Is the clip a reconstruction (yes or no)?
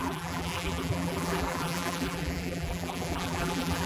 yes